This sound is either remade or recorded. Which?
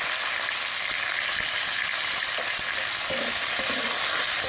recorded